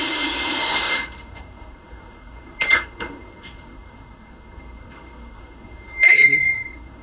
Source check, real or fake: fake